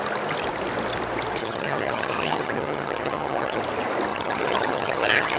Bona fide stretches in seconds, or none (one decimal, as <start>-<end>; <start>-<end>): 0.0-1.4; 3.6-4.1